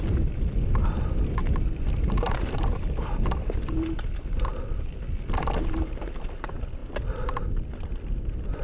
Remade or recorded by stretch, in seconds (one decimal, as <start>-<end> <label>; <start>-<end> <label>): 0.0-8.6 recorded